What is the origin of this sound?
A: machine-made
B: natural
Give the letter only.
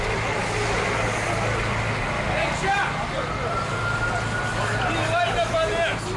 B